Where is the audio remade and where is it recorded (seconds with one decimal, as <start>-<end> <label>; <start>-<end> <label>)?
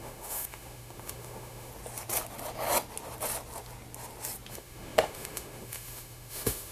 0.0-1.7 remade; 1.7-4.5 recorded; 4.5-6.7 remade